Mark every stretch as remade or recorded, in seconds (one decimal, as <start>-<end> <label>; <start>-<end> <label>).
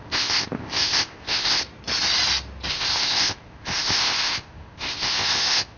0.0-1.6 remade; 1.6-2.7 recorded; 2.7-5.8 remade